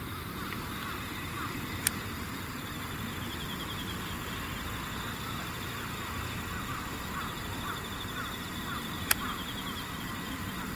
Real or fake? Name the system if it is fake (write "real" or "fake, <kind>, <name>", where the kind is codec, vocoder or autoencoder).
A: fake, vocoder, BigVGAN v2